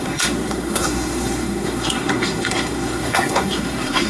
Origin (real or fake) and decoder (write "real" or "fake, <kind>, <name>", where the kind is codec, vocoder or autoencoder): fake, codec, SNAC